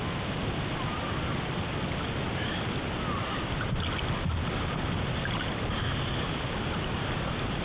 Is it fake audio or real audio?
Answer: real